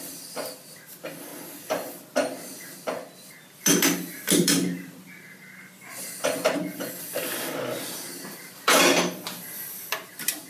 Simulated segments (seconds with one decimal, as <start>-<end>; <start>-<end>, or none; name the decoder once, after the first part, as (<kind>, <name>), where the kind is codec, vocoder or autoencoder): 0.0-1.3 (vocoder, BigVGAN v2); 3.3-10.5